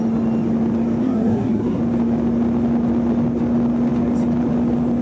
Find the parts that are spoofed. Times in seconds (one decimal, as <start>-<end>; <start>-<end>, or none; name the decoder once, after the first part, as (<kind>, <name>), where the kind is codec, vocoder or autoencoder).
1.0-1.8 (codec, SNAC)